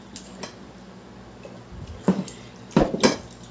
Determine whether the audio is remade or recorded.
recorded